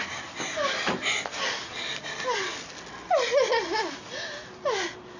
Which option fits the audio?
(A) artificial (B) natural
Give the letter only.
B